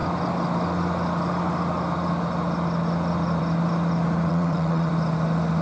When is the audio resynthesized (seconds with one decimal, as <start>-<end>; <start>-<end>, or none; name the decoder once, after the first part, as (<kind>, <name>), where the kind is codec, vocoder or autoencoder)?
4.3-4.9 (vocoder, WaveNeXt)